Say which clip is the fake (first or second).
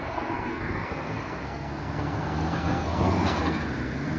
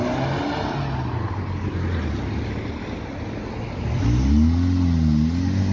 first